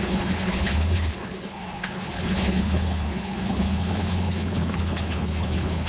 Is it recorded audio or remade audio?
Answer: remade